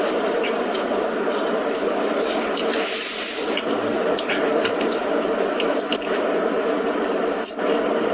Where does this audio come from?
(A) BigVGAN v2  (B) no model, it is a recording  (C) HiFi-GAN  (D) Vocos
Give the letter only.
B